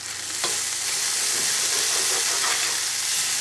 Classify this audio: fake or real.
real